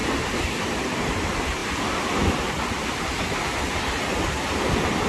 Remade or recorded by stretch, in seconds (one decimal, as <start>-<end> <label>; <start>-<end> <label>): 0.0-5.1 recorded